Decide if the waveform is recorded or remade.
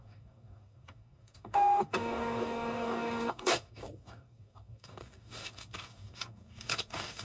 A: remade